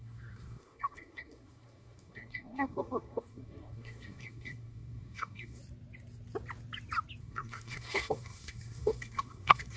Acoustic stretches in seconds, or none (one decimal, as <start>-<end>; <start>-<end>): 5.6-7.2